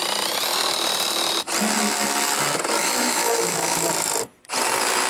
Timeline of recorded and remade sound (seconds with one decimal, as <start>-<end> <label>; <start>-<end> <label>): 0.0-2.8 recorded; 2.8-3.9 remade; 3.9-5.1 recorded